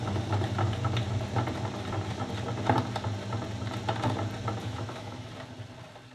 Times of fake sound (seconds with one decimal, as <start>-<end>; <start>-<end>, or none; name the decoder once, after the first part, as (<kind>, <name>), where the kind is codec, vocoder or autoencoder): 4.6-5.3 (autoencoder, DAC-VAE)

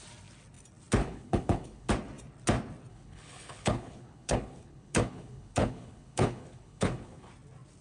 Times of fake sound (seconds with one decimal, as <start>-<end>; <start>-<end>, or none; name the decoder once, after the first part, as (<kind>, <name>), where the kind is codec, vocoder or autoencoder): 1.0-1.9 (codec, HILCodec); 2.9-7.3

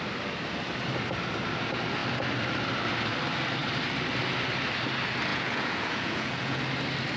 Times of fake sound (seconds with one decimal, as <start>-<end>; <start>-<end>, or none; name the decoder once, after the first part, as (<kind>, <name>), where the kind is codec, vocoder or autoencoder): 5.3-6.6 (vocoder, Vocos)

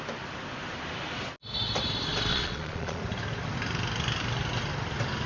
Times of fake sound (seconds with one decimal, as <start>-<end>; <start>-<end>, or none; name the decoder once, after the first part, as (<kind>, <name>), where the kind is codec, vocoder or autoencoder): 2.3-3.0 (vocoder, Vocos)

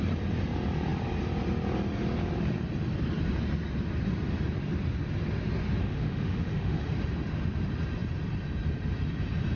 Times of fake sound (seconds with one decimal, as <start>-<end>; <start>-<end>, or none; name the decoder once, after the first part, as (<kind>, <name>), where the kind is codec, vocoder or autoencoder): 5.8-6.9 (autoencoder, DAC-VAE)

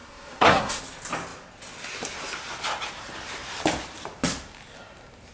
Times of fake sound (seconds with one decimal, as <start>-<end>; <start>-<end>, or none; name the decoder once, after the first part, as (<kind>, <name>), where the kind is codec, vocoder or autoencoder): 0.0-0.8 (codec, SNAC)

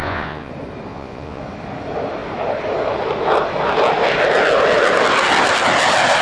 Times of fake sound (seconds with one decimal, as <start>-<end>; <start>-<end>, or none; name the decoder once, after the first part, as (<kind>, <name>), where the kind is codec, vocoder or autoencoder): 0.0-0.5 (vocoder, Vocos); 0.9-1.4

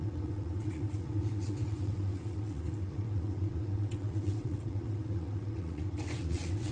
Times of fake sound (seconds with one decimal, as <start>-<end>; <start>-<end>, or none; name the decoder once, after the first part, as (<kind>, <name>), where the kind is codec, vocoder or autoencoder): 0.0-6.7 (vocoder, WaveNeXt)